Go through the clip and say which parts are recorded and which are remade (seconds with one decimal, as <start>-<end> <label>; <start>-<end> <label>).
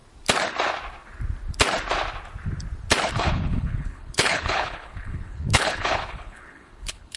0.0-3.1 recorded; 3.1-7.2 remade